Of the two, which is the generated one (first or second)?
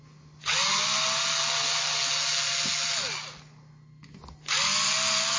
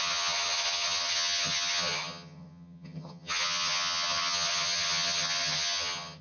second